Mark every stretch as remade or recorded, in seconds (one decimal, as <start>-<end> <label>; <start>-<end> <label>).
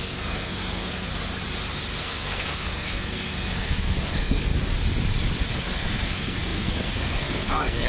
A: 0.0-1.1 remade; 1.1-2.0 recorded; 2.0-4.5 remade; 4.5-5.5 recorded; 5.5-7.9 remade